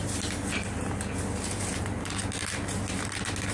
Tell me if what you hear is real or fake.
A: real